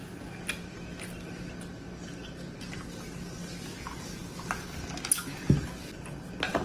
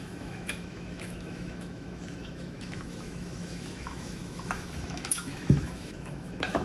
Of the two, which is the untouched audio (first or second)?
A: first